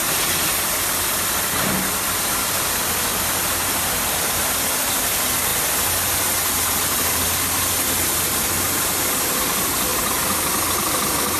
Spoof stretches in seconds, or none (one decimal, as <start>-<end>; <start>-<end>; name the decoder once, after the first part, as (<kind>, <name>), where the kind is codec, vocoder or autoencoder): 3.7-5.5 (vocoder, BigVGAN v2); 9.4-9.9